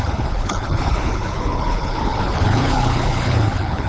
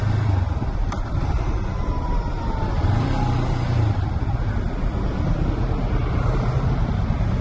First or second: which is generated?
first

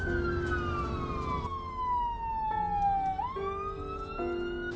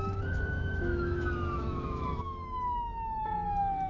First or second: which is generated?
second